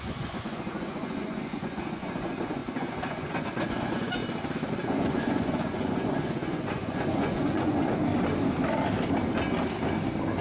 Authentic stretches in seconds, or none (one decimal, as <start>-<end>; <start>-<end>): 4.2-4.8; 8.1-10.4